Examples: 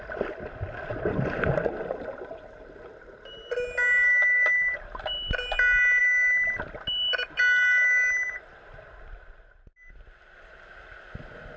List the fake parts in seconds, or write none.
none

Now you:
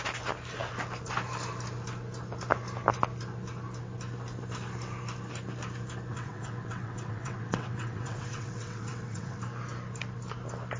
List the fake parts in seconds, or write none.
6.1-9.4